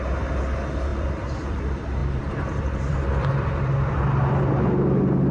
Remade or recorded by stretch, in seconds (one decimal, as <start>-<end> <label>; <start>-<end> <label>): 0.0-0.9 recorded; 0.9-1.6 remade; 1.6-2.0 recorded; 2.0-4.3 remade; 4.3-5.3 recorded